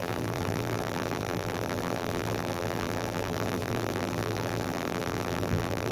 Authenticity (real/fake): fake